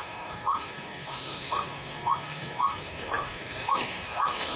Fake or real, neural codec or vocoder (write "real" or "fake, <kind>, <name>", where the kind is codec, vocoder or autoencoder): fake, codec, SNAC